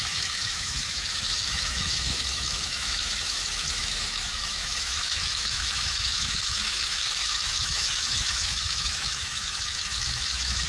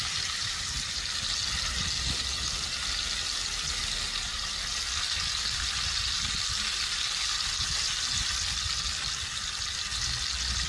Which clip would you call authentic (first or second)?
second